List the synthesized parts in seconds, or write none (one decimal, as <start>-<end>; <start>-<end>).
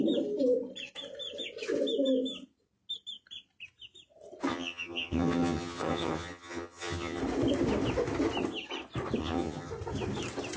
4.5-7.2; 9.2-9.7